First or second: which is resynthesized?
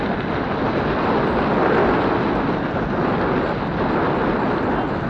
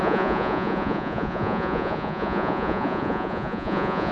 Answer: second